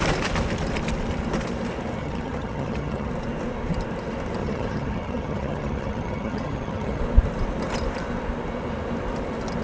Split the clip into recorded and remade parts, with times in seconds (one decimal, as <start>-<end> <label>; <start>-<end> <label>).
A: 0.0-2.0 recorded; 2.0-3.1 remade; 3.1-4.4 recorded; 4.4-7.0 remade; 7.0-9.6 recorded